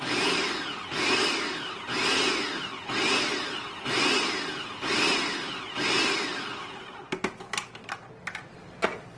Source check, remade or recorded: recorded